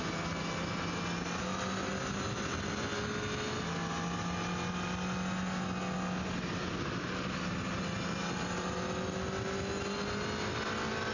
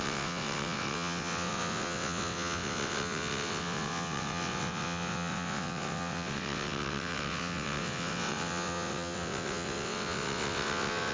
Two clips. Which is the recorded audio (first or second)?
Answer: first